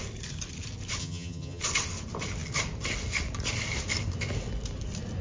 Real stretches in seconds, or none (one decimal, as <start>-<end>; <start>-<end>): 0.0-1.0; 1.6-5.2